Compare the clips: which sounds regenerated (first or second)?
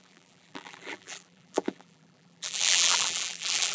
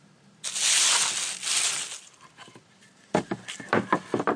first